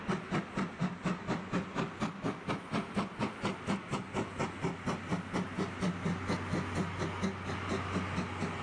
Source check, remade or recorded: recorded